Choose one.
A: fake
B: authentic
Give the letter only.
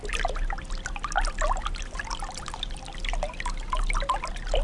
B